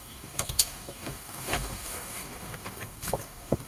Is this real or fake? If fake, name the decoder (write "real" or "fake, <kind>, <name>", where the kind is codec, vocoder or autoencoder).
fake, codec, DAC